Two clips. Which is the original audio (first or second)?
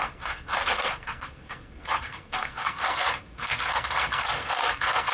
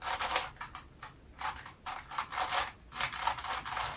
second